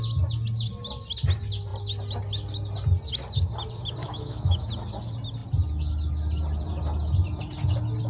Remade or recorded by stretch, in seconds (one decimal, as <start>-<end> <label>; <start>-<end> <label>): 0.0-4.0 recorded; 4.0-4.7 remade; 4.7-8.1 recorded